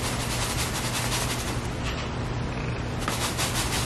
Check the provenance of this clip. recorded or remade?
recorded